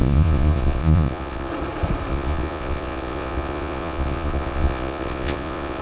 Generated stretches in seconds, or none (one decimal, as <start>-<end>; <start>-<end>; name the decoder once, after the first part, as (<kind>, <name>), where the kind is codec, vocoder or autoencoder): 0.0-1.5 (vocoder, Vocos); 2.1-5.8

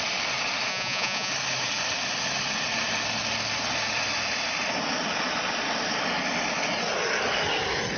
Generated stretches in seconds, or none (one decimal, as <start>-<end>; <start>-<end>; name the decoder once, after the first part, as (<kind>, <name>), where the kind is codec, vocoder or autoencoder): 0.7-1.3 (vocoder, Vocos)

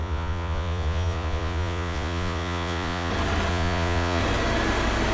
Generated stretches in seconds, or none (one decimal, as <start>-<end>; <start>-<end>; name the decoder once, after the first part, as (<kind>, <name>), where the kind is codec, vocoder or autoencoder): 0.0-3.1 (vocoder, Vocos); 3.5-4.2

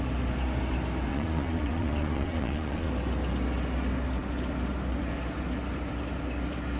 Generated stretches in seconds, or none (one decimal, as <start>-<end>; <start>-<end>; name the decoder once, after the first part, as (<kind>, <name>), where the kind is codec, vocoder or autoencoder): 1.1-2.9 (vocoder, Vocos)